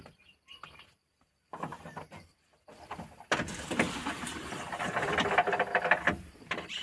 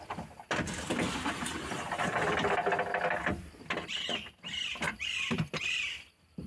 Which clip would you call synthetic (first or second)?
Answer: first